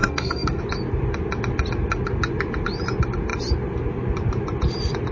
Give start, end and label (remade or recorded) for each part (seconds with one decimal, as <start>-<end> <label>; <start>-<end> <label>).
0.0-0.6 remade; 0.6-5.1 recorded